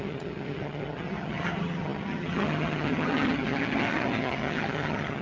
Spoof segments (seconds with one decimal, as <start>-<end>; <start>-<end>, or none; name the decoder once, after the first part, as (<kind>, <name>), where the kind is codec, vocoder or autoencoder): 0.0-5.2 (vocoder, HiFi-GAN)